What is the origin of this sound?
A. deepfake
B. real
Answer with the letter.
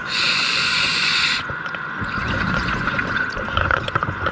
A